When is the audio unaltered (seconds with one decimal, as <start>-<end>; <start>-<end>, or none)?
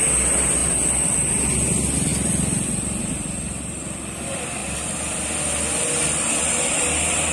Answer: 0.0-7.3